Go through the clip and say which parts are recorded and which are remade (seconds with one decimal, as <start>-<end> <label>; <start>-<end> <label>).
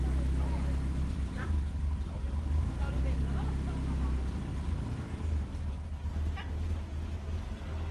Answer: 0.0-7.9 recorded